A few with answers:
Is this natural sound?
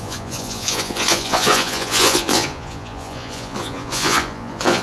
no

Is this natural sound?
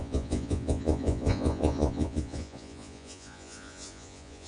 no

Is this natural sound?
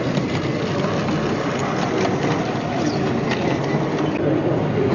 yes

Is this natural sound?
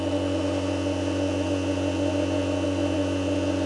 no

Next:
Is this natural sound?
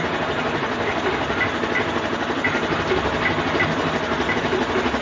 yes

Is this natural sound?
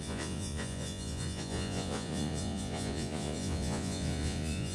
no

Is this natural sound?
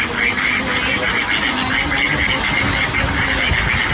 yes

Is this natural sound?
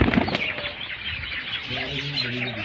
yes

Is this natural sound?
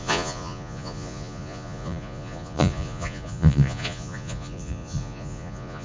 no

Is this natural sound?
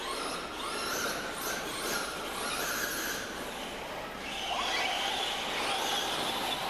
yes